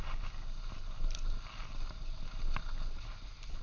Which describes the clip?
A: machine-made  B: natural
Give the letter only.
B